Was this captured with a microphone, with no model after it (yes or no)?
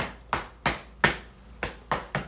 yes